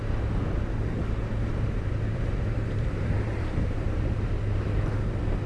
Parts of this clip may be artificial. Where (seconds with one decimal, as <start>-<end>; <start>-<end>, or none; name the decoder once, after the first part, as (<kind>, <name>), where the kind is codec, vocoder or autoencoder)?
1.3-4.6 (vocoder, BigVGAN v2)